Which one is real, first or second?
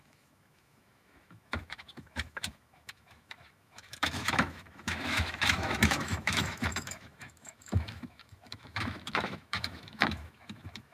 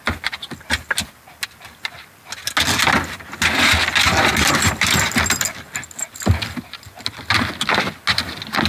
second